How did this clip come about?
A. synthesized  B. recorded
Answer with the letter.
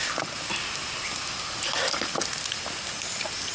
B